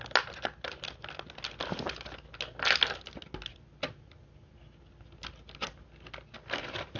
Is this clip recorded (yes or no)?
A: yes